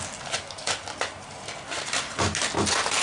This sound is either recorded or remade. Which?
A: recorded